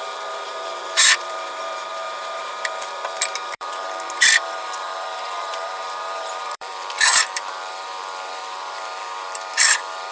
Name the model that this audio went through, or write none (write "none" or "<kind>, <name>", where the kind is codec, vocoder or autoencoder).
vocoder, BigVGAN v2